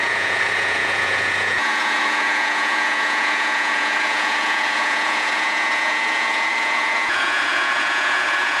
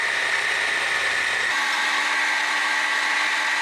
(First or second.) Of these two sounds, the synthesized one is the first